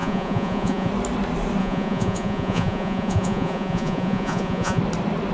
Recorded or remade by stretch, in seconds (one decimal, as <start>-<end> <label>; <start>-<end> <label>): 0.0-0.9 remade; 0.9-1.6 recorded; 1.6-4.8 remade; 4.8-5.3 recorded